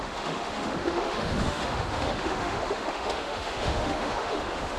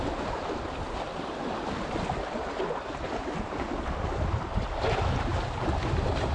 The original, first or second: second